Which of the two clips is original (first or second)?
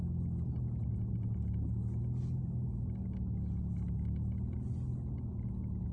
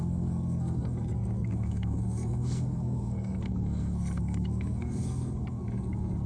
first